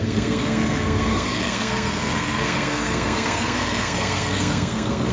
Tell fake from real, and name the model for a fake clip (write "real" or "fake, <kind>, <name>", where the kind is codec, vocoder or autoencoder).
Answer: fake, codec, SNAC